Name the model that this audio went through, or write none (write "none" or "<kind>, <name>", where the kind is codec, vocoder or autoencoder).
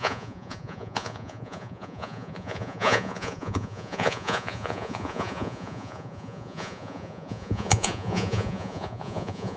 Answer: vocoder, Vocos